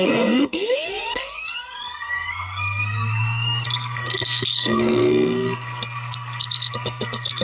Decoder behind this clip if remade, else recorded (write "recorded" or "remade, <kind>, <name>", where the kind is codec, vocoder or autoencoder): remade, codec, SNAC